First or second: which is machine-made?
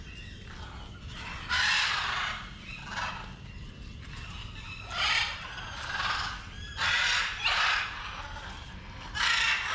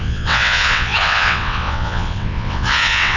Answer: second